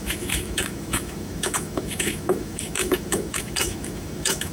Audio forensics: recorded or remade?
remade